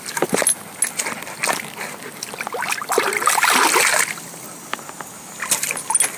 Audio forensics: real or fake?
real